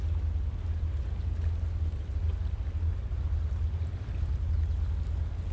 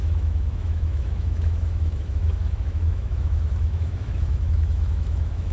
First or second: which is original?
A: first